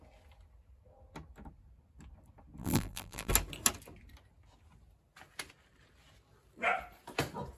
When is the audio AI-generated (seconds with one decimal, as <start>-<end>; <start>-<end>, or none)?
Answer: 2.6-3.3